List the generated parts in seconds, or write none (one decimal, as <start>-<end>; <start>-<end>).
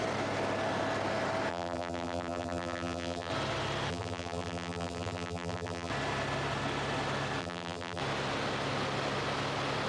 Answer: 1.5-3.3; 3.9-5.9; 7.4-8.0